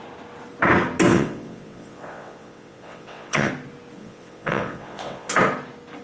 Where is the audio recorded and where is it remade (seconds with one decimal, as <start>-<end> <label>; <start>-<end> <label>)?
0.0-1.1 recorded; 1.1-3.5 remade; 3.5-4.0 recorded; 4.0-5.3 remade; 5.3-6.0 recorded